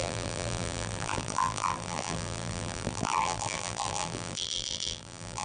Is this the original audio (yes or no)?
no